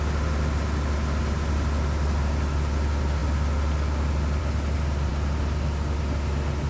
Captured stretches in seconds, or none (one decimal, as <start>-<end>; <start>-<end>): 0.0-6.7